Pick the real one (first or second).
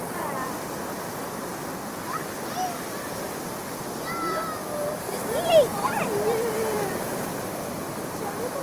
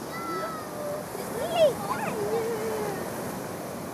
second